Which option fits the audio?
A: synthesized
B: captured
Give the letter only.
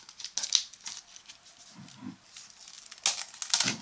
B